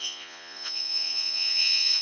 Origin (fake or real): fake